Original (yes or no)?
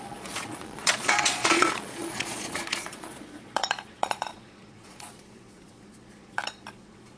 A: no